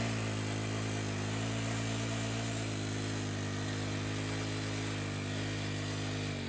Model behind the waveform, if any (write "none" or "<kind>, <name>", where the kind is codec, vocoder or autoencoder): none